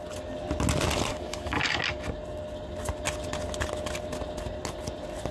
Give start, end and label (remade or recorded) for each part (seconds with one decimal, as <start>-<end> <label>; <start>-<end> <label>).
0.0-1.1 recorded; 1.1-1.8 remade; 1.8-5.3 recorded